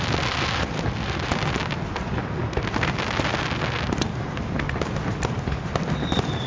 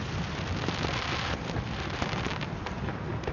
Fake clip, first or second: second